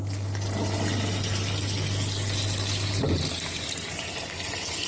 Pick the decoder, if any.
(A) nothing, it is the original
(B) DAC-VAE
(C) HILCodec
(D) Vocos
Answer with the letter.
A